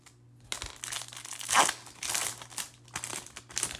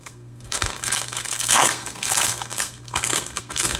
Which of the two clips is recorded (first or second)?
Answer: first